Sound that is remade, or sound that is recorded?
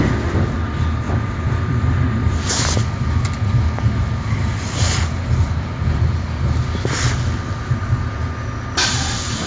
recorded